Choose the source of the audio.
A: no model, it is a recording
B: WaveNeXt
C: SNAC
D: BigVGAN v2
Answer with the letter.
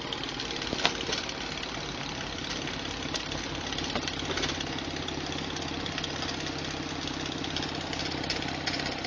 A